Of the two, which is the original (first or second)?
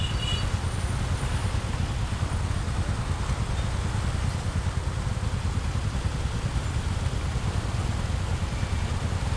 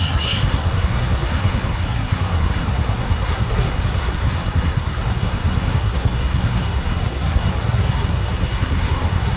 first